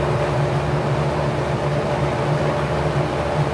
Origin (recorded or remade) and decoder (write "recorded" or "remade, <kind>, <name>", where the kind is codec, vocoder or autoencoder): recorded